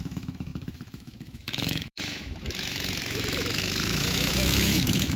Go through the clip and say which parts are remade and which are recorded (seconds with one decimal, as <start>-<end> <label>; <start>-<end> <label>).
0.0-5.2 remade